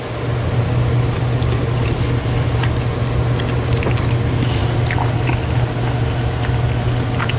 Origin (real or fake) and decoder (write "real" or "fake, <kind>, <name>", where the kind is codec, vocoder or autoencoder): real